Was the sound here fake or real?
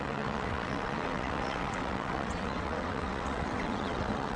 fake